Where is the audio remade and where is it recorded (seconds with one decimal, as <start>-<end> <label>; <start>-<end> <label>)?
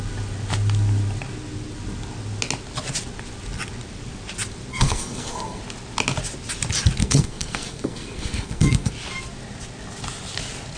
0.0-4.7 recorded; 4.7-5.6 remade; 5.6-7.0 recorded; 7.0-8.9 remade; 8.9-10.8 recorded